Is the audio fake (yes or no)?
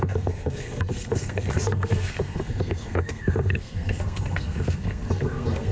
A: yes